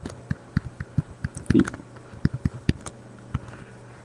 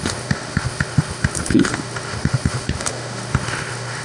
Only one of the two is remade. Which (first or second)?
second